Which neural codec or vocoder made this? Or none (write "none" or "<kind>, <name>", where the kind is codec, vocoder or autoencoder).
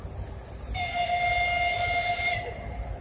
none